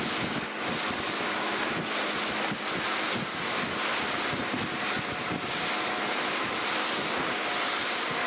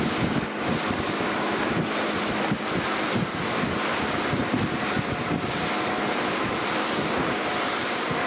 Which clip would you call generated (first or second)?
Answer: second